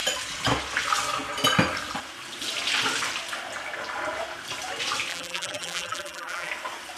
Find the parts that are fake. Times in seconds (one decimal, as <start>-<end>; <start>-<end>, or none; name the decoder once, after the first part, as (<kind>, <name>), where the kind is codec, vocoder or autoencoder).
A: 5.1-6.5 (vocoder, BigVGAN v2)